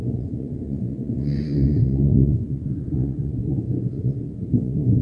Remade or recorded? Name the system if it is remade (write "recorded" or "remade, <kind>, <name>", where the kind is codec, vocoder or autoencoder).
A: remade, vocoder, Vocos